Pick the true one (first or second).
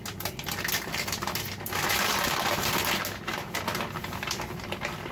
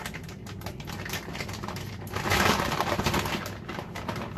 first